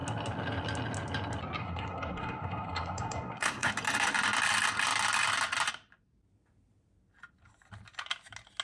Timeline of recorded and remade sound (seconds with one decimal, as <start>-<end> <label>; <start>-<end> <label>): 0.0-1.6 recorded; 1.6-3.7 remade; 3.7-8.6 recorded